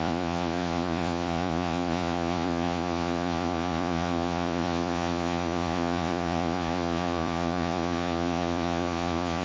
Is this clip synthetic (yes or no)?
yes